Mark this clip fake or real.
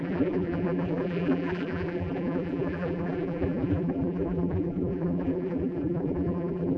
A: fake